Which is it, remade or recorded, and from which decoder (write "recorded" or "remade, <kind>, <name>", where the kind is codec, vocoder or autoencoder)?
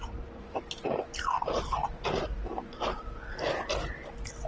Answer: recorded